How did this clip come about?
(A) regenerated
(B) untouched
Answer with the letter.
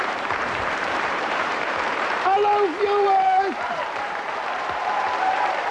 A